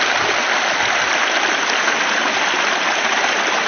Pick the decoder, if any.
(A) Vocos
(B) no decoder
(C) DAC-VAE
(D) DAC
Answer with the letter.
B